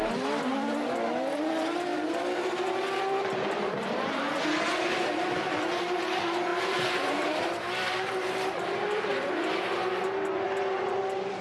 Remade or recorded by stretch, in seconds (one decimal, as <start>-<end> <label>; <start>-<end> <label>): 0.0-1.9 recorded; 1.9-6.0 remade; 6.0-6.5 recorded; 6.5-9.6 remade; 9.6-11.4 recorded